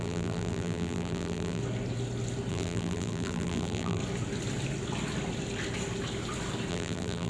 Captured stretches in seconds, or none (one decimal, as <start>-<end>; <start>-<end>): 1.6-2.5; 4.0-6.7